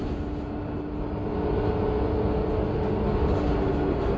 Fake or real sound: real